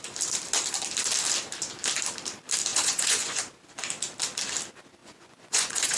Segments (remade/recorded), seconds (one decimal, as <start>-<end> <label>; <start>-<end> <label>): 0.0-2.7 recorded; 2.7-3.4 remade; 3.4-5.0 recorded; 5.0-6.0 remade